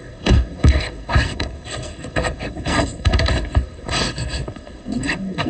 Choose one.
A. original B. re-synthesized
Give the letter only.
B